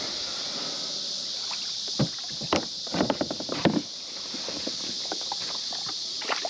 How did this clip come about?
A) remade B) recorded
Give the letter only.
B